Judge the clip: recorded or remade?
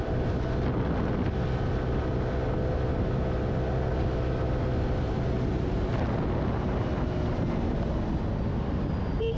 recorded